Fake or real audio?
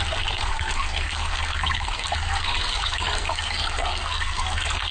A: fake